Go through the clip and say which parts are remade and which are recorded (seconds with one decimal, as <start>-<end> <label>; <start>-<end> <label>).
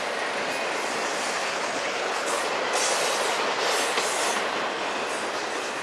0.0-1.4 recorded; 1.4-2.4 remade; 2.4-5.8 recorded